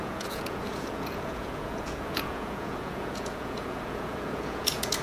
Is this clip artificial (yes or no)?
yes